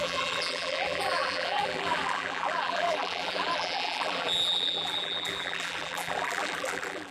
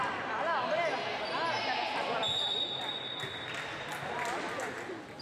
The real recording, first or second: second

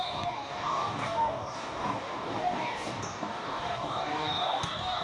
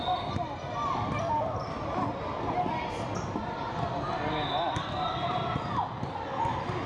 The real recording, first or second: second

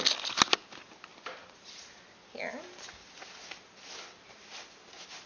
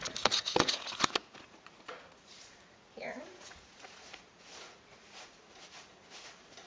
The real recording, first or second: first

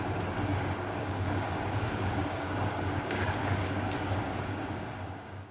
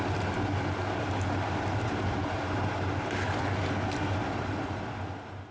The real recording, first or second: second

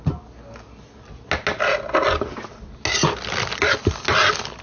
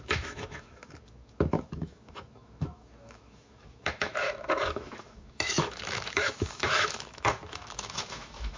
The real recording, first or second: first